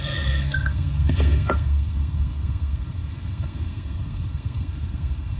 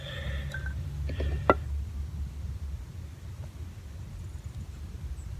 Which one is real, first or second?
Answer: second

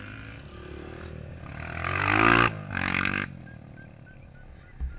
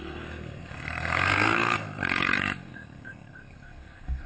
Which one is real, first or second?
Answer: first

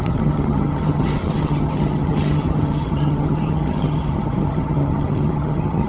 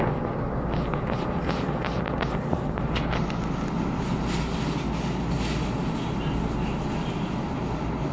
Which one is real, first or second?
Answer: second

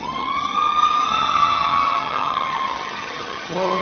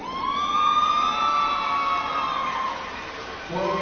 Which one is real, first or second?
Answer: second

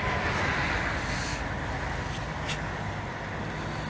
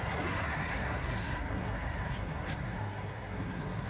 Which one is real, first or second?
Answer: first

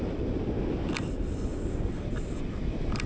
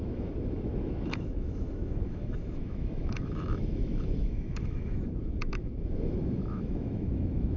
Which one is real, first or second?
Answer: first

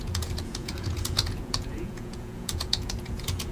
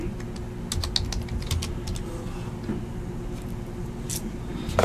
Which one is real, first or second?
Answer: second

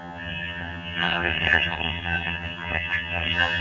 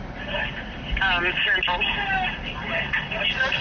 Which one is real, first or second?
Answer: second